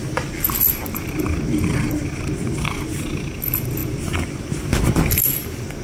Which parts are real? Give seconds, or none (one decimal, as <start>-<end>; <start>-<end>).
0.0-5.8